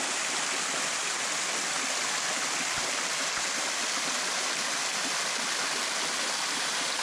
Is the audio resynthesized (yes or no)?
no